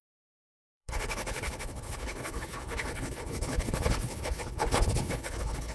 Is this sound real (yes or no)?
no